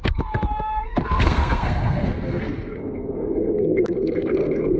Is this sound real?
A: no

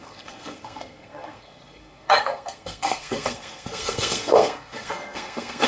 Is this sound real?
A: no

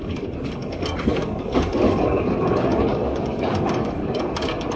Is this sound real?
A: no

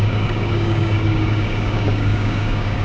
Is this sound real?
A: no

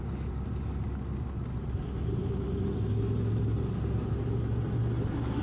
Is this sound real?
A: yes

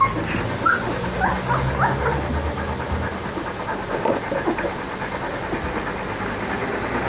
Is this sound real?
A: yes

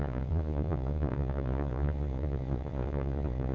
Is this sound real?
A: no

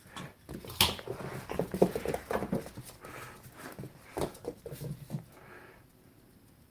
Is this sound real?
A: yes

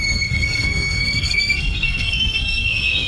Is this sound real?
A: no